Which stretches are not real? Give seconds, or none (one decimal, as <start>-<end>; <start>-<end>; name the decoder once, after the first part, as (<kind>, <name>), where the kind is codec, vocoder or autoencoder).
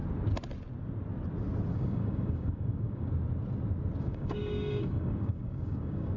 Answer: 1.7-3.1 (codec, DAC); 4.0-6.2